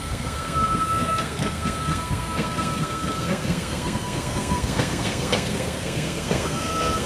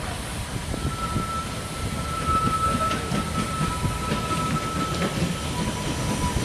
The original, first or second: second